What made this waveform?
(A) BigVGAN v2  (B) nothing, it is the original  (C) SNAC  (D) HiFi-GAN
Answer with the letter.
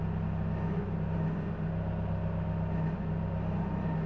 B